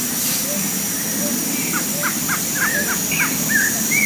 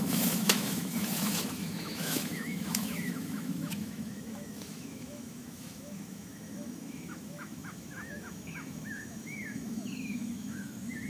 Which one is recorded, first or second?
first